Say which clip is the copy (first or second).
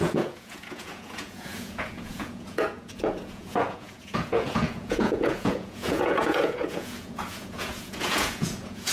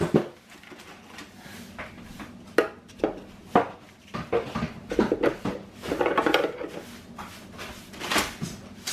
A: first